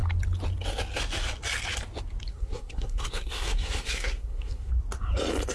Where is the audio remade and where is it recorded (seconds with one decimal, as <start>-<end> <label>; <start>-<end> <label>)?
0.0-2.3 recorded; 2.3-4.7 remade; 4.7-5.5 recorded

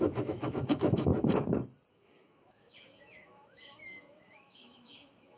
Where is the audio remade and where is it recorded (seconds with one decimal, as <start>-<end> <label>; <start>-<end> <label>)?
0.0-1.1 remade; 1.1-1.9 recorded; 1.9-5.4 remade

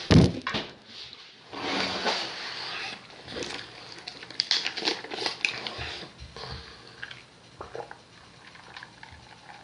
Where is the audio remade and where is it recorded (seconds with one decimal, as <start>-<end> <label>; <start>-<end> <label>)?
0.0-9.6 recorded

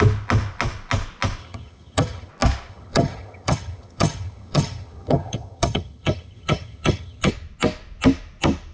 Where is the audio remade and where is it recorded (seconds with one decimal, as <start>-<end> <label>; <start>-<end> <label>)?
0.0-1.4 recorded; 1.4-2.3 remade; 2.3-2.7 recorded; 2.7-7.3 remade; 7.3-8.7 recorded

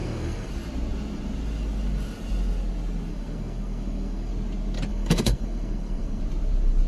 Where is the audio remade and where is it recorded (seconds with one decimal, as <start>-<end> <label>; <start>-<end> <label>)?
0.0-0.5 remade; 0.5-3.1 recorded; 3.1-4.3 remade; 4.3-4.9 recorded; 4.9-6.2 remade; 6.2-6.9 recorded

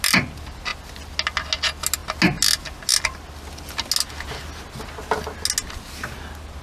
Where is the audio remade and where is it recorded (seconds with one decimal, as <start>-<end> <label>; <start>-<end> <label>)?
0.0-6.6 recorded